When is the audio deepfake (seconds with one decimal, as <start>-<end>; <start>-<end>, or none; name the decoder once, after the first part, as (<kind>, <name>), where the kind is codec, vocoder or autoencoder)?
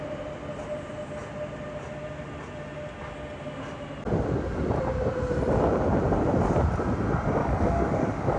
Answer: 7.4-8.4 (codec, DAC)